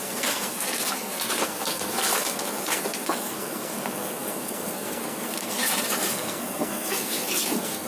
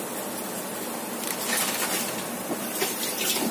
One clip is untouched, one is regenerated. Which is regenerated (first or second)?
first